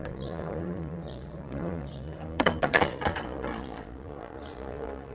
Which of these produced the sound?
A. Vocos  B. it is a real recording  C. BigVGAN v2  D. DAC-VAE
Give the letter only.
A